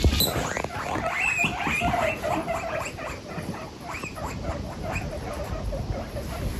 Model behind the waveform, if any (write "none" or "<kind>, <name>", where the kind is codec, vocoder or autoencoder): none